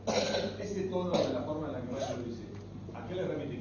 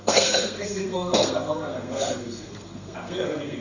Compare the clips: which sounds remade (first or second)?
second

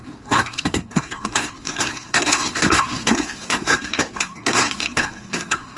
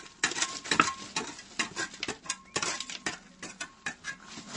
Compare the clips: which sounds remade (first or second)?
first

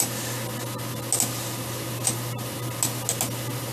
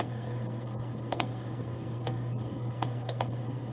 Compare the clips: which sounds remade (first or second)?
second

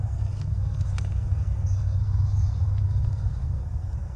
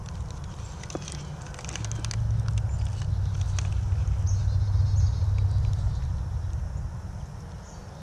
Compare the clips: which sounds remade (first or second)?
first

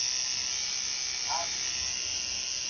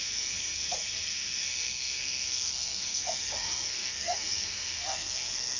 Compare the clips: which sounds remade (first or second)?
second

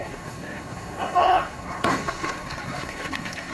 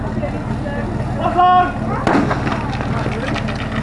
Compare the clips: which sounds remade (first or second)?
first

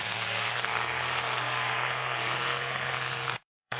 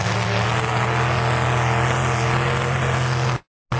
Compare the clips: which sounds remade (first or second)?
first